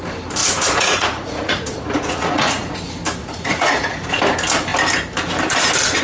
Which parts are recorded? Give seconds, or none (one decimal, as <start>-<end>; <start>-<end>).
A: 0.0-0.4; 2.8-3.2; 4.2-6.0